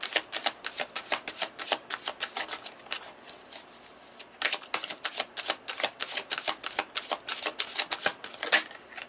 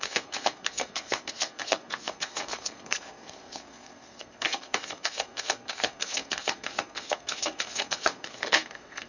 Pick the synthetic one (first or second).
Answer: second